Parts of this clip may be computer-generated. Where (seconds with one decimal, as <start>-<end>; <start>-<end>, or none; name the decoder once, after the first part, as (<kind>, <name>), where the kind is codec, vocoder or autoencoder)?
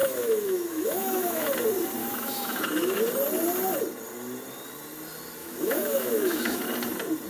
0.0-1.5 (autoencoder, DAC-VAE); 2.0-3.0; 5.4-6.6